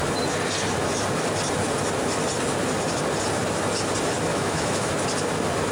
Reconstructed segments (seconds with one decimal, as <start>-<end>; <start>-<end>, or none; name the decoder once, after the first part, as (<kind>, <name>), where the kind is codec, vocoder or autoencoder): 4.3-4.9 (autoencoder, DAC-VAE)